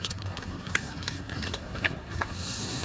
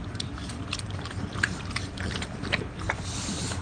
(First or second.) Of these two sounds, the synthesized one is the first